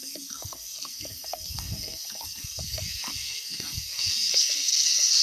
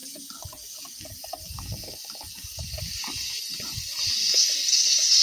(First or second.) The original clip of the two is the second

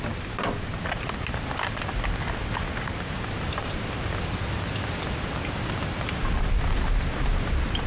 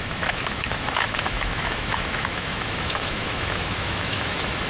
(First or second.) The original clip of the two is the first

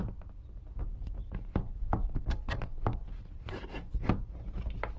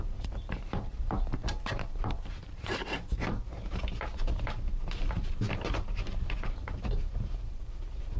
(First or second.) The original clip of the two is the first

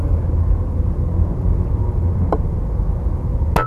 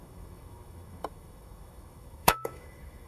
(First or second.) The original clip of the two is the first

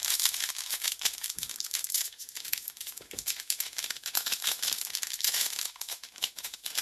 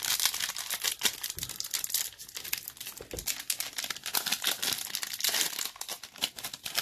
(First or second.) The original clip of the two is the second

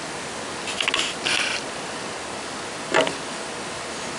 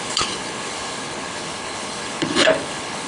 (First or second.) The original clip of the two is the first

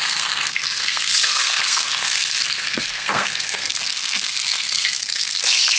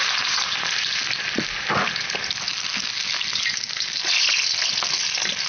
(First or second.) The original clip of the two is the second